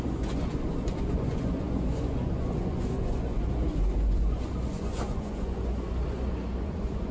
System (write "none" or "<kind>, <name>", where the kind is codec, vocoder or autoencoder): vocoder, Vocos